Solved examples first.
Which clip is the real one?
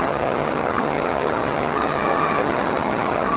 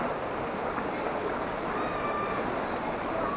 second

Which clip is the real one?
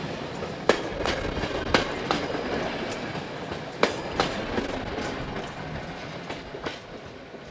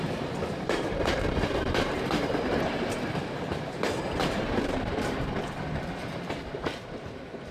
first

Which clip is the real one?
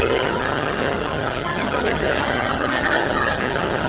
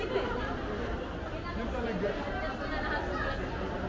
second